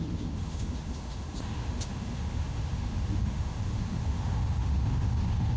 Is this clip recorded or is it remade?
remade